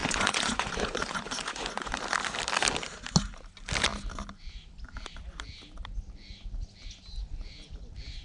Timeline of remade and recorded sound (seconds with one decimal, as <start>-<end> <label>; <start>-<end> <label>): 0.0-1.9 remade; 1.9-8.2 recorded